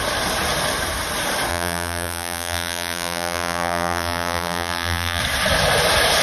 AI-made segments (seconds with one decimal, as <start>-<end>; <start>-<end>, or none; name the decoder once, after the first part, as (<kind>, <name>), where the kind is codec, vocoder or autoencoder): 1.5-5.2 (vocoder, BigVGAN v2)